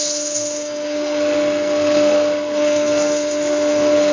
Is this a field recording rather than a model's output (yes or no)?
no